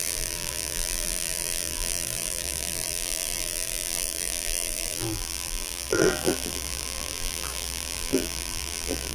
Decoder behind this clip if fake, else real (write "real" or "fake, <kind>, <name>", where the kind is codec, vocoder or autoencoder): fake, vocoder, BigVGAN v2